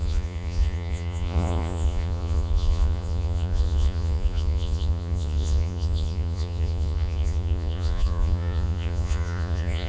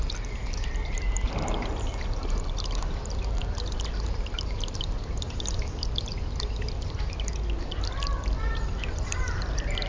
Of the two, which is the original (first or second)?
second